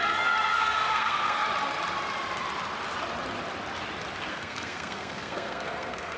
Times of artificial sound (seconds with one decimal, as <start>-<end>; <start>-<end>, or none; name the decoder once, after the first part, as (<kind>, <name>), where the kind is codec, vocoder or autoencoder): 0.0-1.4 (codec, SNAC); 4.3-6.2